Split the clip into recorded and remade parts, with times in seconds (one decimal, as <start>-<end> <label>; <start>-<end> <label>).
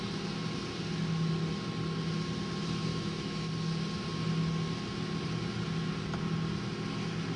0.0-2.9 recorded; 2.9-3.5 remade; 3.5-7.4 recorded